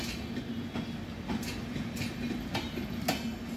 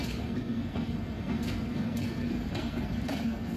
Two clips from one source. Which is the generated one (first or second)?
second